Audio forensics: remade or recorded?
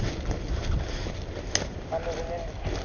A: recorded